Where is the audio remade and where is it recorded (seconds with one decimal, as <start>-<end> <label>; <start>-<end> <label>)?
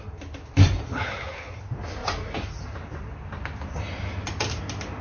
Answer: 0.0-0.9 recorded; 0.9-1.6 remade; 1.6-5.0 recorded